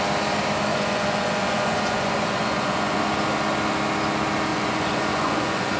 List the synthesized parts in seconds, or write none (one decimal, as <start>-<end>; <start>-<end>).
0.7-3.0; 4.5-5.8